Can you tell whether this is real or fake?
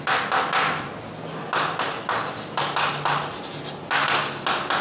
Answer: real